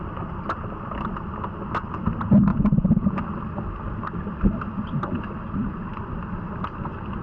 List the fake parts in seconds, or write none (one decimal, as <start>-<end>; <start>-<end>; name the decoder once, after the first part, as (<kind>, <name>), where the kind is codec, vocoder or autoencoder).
2.5-3.2 (vocoder, Vocos)